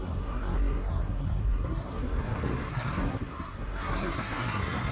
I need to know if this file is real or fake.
fake